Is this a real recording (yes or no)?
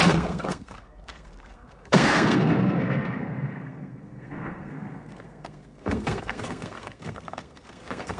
no